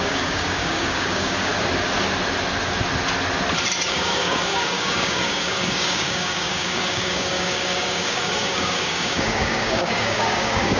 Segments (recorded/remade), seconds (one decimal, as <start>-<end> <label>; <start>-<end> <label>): 0.0-1.5 remade; 1.5-3.9 recorded; 3.9-10.8 remade